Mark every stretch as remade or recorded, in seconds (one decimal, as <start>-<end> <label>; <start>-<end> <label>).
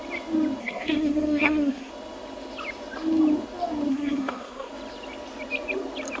0.0-0.6 recorded; 0.6-1.9 remade; 1.9-3.9 recorded; 3.9-4.7 remade; 4.7-6.2 recorded